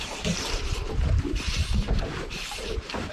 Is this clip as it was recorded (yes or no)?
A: no